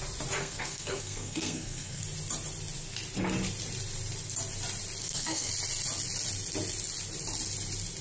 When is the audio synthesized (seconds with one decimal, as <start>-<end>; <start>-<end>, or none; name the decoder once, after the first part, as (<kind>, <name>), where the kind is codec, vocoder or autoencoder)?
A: 0.4-2.0 (codec, SNAC); 5.0-5.5